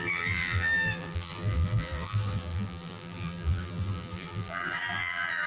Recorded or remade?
remade